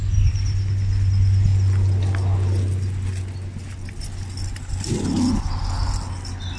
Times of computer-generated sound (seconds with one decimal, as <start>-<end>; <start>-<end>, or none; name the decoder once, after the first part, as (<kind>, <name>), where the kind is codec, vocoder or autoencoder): none